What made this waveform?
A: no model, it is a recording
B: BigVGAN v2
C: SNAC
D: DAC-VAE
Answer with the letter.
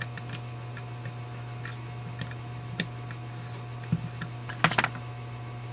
A